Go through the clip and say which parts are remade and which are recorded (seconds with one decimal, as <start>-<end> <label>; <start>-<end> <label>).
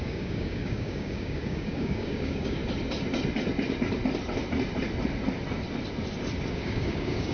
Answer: 0.0-2.6 remade; 2.6-6.5 recorded; 6.5-7.3 remade